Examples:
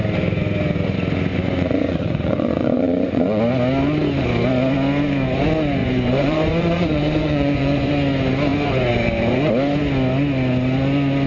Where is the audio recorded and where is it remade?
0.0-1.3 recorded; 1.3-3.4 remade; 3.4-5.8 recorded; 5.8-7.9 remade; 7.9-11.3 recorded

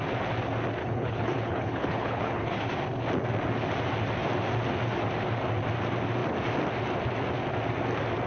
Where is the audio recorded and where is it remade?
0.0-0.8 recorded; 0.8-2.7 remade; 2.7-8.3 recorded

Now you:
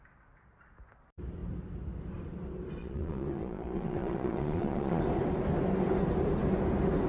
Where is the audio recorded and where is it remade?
0.0-2.8 recorded; 2.8-5.0 remade; 5.0-7.1 recorded

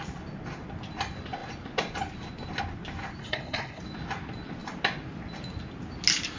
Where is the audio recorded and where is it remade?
0.0-3.2 recorded; 3.2-3.8 remade; 3.8-6.4 recorded

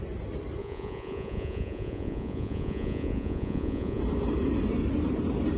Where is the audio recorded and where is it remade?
0.0-0.6 recorded; 0.6-4.0 remade; 4.0-5.6 recorded

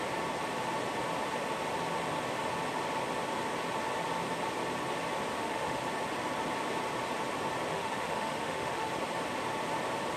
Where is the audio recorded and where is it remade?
0.0-5.3 recorded; 5.3-5.8 remade; 5.8-7.7 recorded; 7.7-8.9 remade; 8.9-10.2 recorded